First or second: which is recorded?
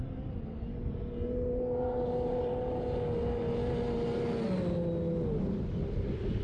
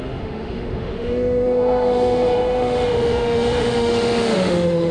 first